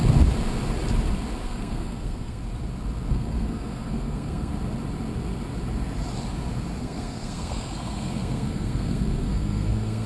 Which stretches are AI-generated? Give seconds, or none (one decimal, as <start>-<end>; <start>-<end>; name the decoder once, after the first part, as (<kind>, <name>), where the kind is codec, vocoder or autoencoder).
1.4-2.4 (codec, SNAC); 3.1-4.5; 6.8-10.1